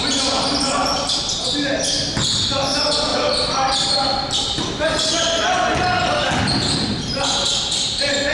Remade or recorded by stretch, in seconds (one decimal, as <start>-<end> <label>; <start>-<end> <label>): 0.0-8.3 recorded